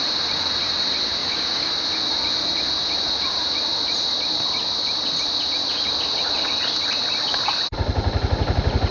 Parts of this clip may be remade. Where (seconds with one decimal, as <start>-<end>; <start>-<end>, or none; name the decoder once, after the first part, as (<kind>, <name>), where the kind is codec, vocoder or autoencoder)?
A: 1.2-1.7 (codec, DAC)